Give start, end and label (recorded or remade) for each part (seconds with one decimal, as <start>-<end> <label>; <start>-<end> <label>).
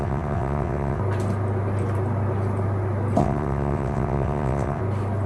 0.0-1.0 remade; 1.0-3.2 recorded; 3.2-4.8 remade; 4.8-5.3 recorded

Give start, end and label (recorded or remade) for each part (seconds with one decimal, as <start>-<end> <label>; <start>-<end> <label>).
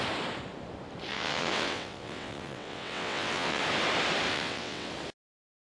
0.0-1.1 recorded; 1.1-3.6 remade; 3.6-4.3 recorded; 4.3-4.9 remade; 4.9-5.6 recorded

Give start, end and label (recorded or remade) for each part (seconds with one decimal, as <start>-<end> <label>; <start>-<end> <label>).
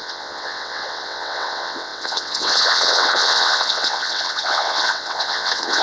0.0-5.8 remade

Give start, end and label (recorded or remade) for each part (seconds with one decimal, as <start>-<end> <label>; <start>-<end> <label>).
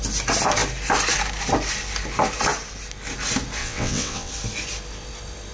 0.0-3.6 recorded; 3.6-4.3 remade; 4.3-5.5 recorded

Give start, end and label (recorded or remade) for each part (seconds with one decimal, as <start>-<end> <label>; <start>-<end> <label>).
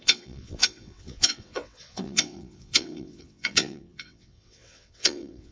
0.0-5.5 remade